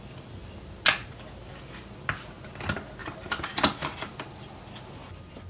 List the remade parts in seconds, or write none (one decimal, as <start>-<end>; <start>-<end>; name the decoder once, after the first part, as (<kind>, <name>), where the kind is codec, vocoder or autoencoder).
3.0-5.1 (vocoder, BigVGAN v2)